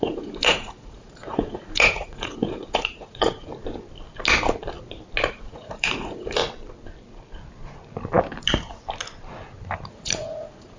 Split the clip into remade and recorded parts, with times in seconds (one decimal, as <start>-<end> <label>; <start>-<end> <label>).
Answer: 0.0-3.5 remade; 3.5-5.3 recorded; 5.3-6.4 remade; 6.4-9.9 recorded; 9.9-10.8 remade